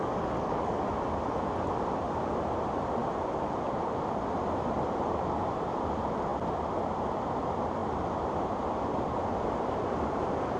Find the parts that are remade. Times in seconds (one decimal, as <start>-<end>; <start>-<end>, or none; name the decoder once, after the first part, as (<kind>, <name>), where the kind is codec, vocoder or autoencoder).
0.0-0.8 (codec, DAC)